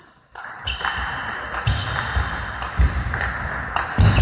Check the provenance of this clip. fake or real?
real